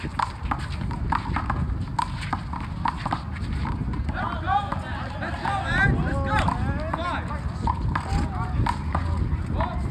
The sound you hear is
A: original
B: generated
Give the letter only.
A